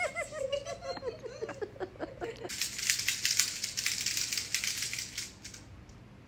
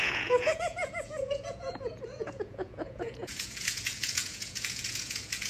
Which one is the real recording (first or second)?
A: first